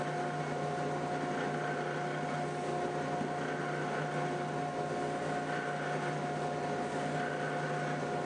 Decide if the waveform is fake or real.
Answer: real